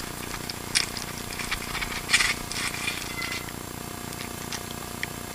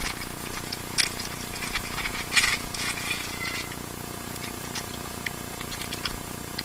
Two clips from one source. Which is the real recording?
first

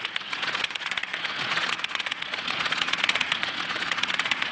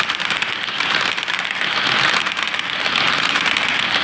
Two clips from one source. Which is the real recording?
second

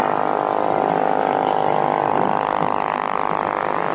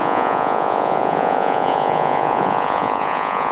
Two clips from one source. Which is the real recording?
first